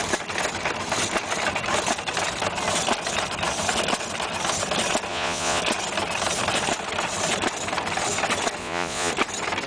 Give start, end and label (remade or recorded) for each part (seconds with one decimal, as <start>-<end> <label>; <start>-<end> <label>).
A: 0.0-5.1 recorded; 5.1-5.6 remade; 5.6-8.6 recorded; 8.6-9.1 remade; 9.1-9.7 recorded